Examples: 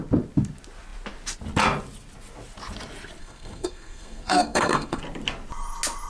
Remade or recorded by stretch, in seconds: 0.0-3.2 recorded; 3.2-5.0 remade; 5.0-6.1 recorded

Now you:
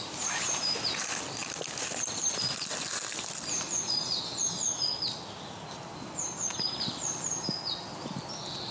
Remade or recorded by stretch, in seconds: 0.0-8.7 recorded

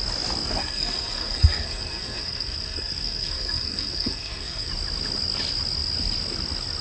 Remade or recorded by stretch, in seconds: 0.0-0.6 recorded; 0.6-4.7 remade; 4.7-6.8 recorded

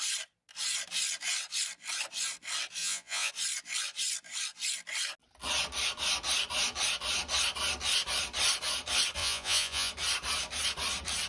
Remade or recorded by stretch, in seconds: 0.0-2.8 recorded; 2.8-3.3 remade; 3.3-9.2 recorded; 9.2-9.9 remade; 9.9-11.3 recorded

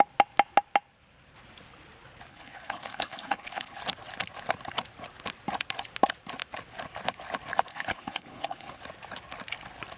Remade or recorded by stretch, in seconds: 0.0-2.3 recorded; 2.3-3.8 remade; 3.8-7.7 recorded; 7.7-8.8 remade; 8.8-10.0 recorded